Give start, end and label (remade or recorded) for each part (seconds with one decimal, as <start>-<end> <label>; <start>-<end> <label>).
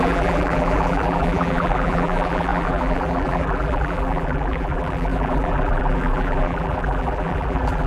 0.0-7.9 remade